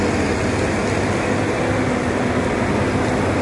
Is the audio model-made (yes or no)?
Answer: no